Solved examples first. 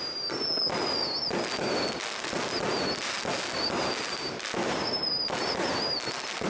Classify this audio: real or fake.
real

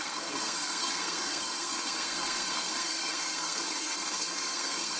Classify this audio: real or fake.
fake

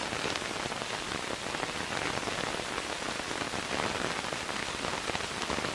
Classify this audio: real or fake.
real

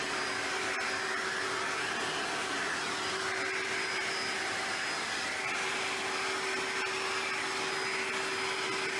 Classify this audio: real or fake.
real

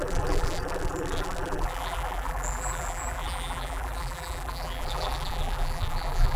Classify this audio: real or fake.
fake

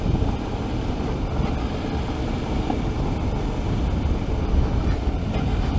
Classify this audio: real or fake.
real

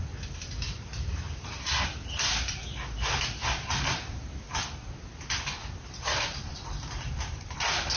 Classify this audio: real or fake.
fake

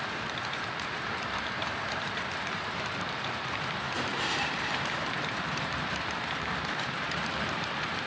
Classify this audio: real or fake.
fake